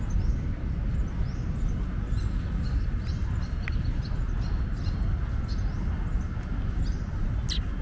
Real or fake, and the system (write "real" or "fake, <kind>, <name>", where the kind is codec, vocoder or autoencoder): real